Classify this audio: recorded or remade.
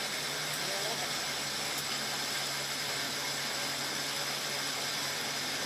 recorded